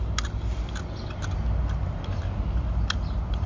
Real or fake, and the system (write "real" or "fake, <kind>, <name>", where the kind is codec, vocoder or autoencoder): real